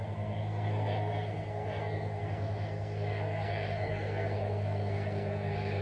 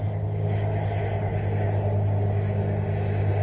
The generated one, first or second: first